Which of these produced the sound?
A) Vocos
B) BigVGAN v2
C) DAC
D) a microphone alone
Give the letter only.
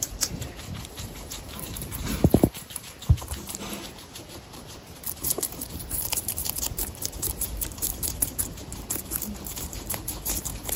B